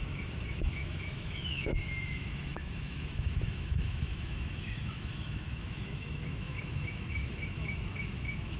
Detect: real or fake fake